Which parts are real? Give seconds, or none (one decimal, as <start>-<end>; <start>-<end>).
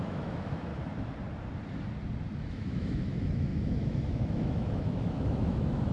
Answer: 0.7-2.5